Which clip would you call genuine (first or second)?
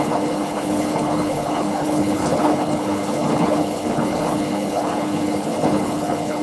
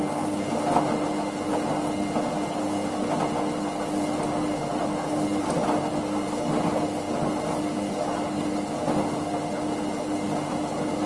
second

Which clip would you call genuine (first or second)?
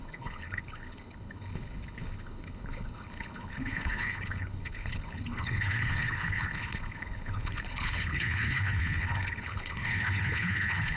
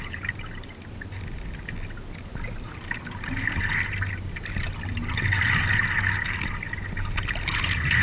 second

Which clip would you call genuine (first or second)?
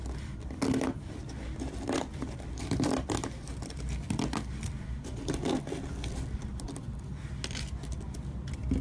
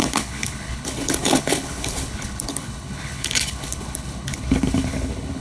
first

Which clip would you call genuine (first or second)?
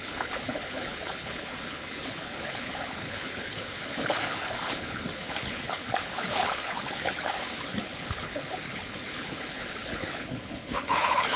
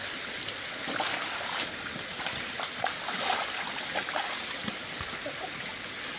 second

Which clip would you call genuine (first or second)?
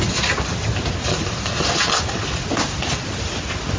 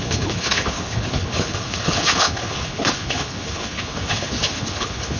first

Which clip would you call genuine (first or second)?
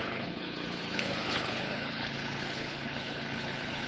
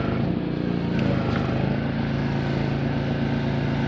second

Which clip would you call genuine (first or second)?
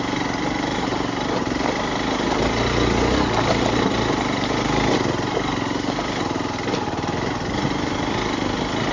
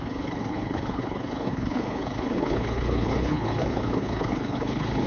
first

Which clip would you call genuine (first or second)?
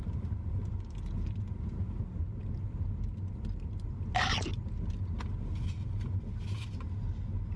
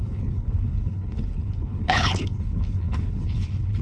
first